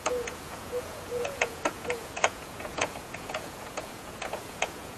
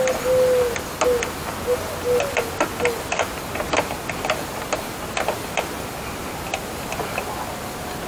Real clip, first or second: second